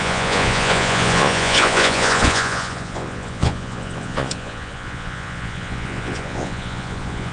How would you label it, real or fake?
fake